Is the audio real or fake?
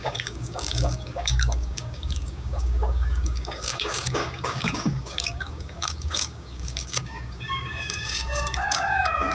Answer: fake